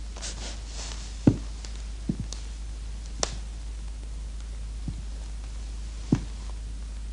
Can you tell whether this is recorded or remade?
recorded